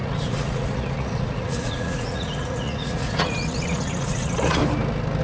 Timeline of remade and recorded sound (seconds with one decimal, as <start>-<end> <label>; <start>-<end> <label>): 0.0-4.6 remade; 4.6-5.2 recorded